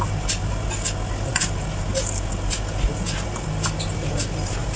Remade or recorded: recorded